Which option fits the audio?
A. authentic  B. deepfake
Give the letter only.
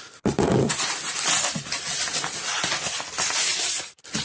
B